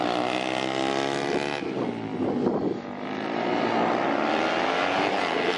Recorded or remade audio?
recorded